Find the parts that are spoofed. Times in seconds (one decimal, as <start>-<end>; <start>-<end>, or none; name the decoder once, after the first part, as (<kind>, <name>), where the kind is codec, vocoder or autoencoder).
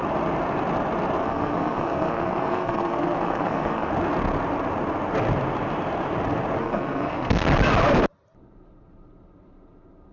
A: 1.2-3.9 (codec, SNAC); 6.6-7.4